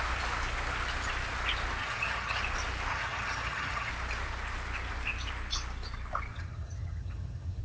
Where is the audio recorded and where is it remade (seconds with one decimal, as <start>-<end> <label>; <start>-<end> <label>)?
0.0-1.8 recorded; 1.8-2.4 remade; 2.4-2.9 recorded; 2.9-3.9 remade; 3.9-6.3 recorded; 6.3-7.6 remade